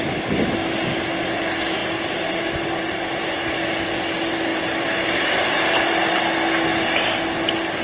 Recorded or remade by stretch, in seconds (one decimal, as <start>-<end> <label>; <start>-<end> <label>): 0.0-1.8 recorded; 1.8-3.5 remade; 3.5-4.5 recorded; 4.5-6.2 remade; 6.2-7.8 recorded